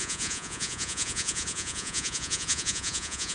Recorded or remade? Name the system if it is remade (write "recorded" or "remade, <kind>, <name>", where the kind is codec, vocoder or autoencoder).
remade, vocoder, Vocos